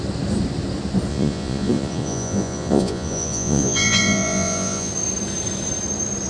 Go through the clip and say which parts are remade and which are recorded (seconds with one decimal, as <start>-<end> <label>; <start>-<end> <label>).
0.0-1.1 recorded; 1.1-4.9 remade; 4.9-6.3 recorded